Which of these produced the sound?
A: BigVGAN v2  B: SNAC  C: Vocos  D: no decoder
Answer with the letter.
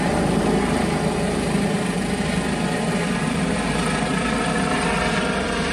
D